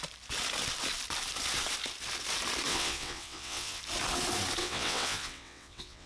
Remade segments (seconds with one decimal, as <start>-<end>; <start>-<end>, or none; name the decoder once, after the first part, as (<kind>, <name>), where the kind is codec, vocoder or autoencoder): 2.7-3.8 (vocoder, WaveNeXt); 4.6-6.1